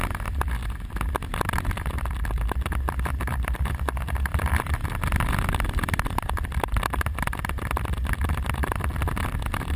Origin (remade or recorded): remade